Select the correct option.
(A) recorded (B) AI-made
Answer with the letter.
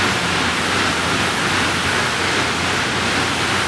A